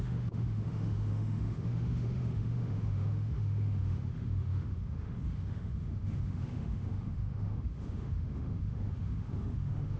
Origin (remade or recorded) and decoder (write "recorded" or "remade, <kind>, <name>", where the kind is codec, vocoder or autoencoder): remade, autoencoder, DAC-VAE